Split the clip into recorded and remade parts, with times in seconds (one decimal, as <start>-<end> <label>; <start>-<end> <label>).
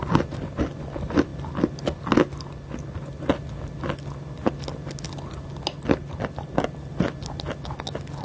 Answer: 0.0-8.2 recorded